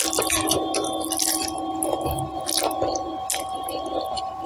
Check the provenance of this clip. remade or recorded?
recorded